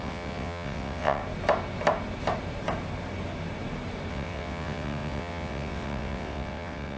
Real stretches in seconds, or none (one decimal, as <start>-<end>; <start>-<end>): 1.2-4.1

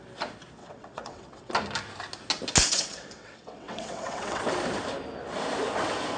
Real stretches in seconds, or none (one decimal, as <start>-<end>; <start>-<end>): 0.0-0.6; 1.5-2.6; 4.4-6.2